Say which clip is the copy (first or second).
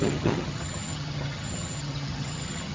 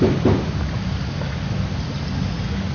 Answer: first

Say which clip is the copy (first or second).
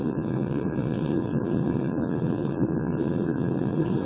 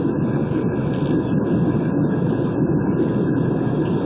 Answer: first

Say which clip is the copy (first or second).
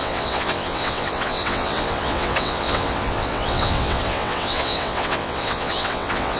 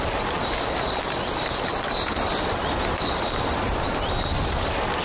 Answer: first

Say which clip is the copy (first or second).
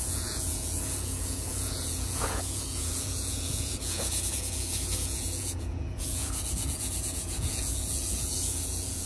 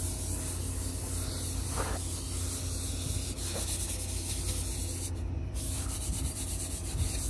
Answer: first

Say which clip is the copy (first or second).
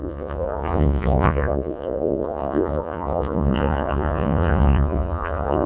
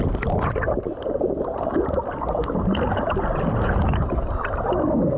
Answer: first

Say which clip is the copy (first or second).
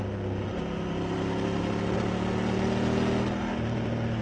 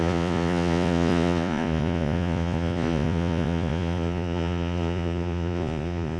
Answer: second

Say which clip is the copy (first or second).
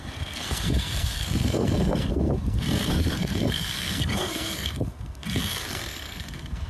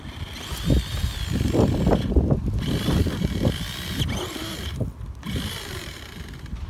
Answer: first